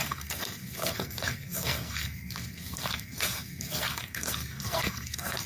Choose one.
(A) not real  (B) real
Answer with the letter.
A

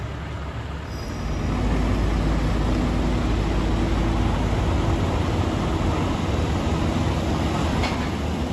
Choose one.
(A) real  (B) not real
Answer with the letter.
A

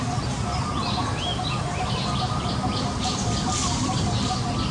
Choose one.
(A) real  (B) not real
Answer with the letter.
A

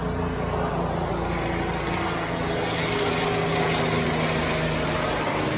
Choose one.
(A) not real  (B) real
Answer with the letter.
B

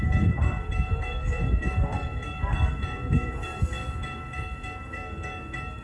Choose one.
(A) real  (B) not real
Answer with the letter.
B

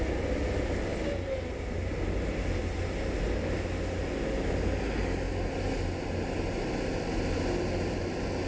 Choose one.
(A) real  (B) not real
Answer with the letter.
A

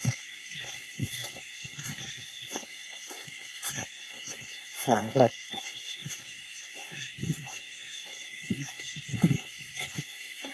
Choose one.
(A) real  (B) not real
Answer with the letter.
B